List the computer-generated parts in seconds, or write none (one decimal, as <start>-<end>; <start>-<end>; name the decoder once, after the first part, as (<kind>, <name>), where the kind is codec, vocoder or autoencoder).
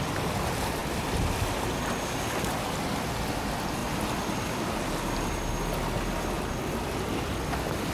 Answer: none